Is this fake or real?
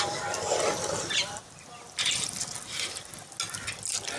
real